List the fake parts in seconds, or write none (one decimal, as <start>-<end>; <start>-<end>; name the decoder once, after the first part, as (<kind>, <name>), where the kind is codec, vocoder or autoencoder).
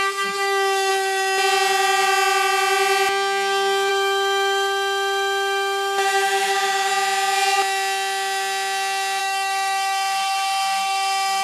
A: 0.0-0.9 (autoencoder, DAC-VAE); 3.9-6.9; 9.2-11.4